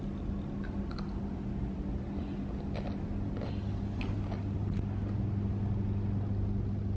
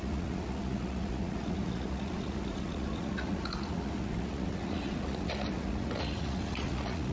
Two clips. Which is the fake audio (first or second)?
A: second